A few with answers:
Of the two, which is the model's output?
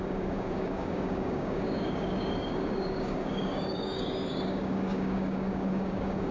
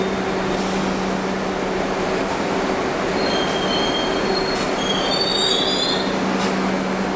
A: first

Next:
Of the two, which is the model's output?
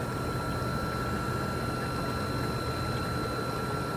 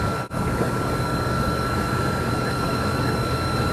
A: second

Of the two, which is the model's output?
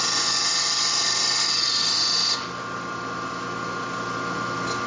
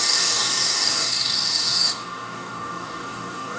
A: second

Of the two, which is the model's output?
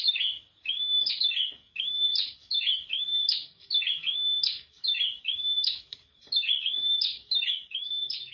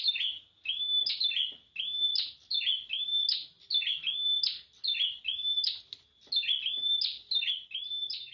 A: first